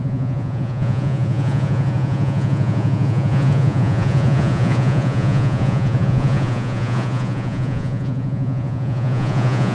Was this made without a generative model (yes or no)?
no